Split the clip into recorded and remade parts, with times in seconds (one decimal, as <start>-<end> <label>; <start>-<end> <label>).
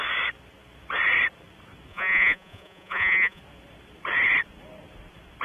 0.0-1.9 recorded; 1.9-3.4 remade; 3.4-5.4 recorded